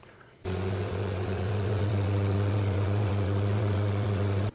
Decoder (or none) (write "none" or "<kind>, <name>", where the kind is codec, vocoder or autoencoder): vocoder, WaveNeXt